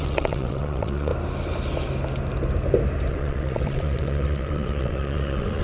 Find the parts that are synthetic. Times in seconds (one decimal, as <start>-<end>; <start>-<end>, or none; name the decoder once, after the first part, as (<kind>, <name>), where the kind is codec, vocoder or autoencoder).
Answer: 0.0-1.1 (vocoder, WaveNeXt); 3.1-5.6